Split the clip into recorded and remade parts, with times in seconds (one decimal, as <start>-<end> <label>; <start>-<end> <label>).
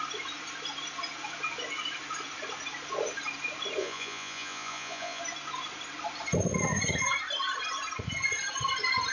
0.0-3.8 recorded; 3.8-5.2 remade; 5.2-9.1 recorded